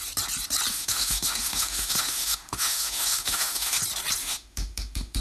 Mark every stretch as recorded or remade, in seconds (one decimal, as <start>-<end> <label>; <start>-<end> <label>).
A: 0.0-0.7 recorded; 0.7-3.8 remade; 3.8-4.2 recorded; 4.2-5.2 remade

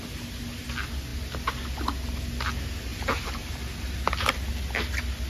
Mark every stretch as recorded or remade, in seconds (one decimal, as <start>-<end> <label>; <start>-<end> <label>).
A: 0.0-5.3 recorded

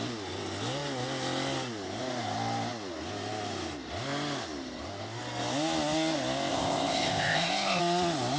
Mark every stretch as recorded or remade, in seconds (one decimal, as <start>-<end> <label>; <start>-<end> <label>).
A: 0.0-6.5 recorded; 6.5-7.8 remade; 7.8-8.4 recorded

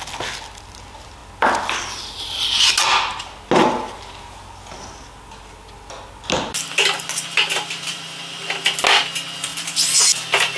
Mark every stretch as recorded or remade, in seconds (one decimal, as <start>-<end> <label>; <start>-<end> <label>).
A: 0.0-7.9 recorded; 7.9-8.4 remade; 8.4-10.6 recorded

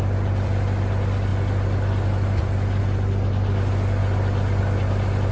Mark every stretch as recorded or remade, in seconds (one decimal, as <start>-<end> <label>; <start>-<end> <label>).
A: 0.0-5.3 recorded

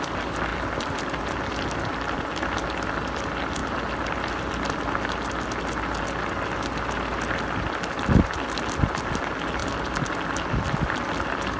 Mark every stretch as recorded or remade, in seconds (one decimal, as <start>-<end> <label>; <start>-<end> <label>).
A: 0.0-11.6 recorded

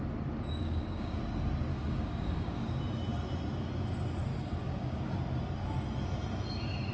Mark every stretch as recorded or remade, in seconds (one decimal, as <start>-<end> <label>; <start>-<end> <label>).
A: 0.0-0.6 recorded; 0.6-1.2 remade; 1.2-1.7 recorded; 1.7-2.8 remade; 2.8-4.3 recorded; 4.3-5.1 remade; 5.1-6.9 recorded